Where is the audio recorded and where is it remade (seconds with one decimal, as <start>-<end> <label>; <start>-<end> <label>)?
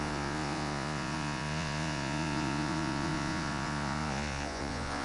0.0-5.0 remade